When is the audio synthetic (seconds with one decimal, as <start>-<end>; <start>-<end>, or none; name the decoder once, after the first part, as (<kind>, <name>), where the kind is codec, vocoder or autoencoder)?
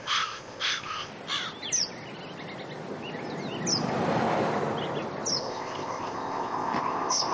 0.0-1.1 (codec, ZipCodec); 5.4-7.3